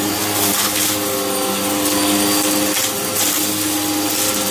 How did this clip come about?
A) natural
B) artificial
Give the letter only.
A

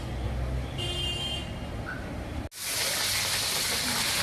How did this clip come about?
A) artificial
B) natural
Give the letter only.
B